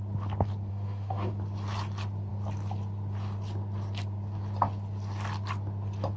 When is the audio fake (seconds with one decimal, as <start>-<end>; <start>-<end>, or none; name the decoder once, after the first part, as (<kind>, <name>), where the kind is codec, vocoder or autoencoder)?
0.7-1.3 (autoencoder, DAC-VAE)